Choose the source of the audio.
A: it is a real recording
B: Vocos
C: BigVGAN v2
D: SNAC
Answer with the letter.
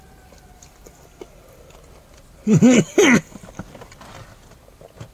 A